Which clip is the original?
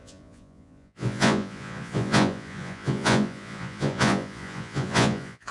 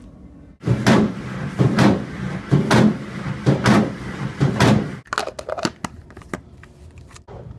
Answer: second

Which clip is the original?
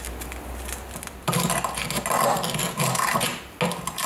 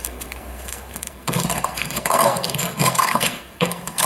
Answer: first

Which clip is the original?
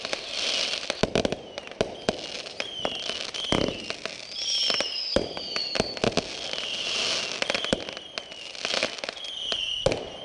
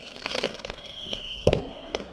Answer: first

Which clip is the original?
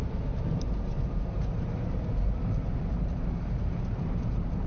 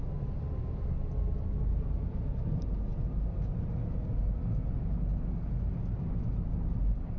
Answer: second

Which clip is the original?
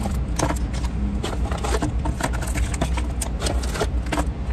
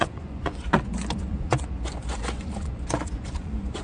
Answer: first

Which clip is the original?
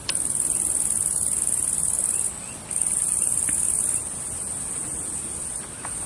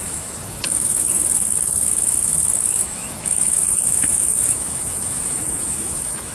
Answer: first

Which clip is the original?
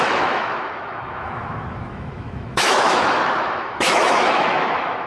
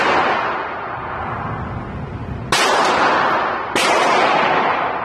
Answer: second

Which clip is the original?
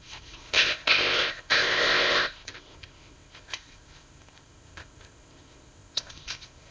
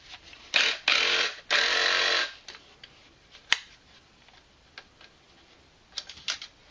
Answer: second